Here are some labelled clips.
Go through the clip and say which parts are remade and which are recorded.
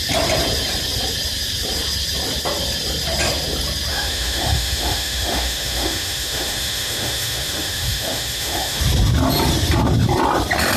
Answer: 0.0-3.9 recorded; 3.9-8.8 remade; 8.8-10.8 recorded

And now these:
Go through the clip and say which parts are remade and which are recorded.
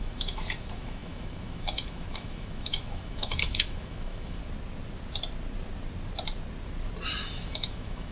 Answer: 0.0-4.4 remade; 4.4-7.2 recorded; 7.2-8.1 remade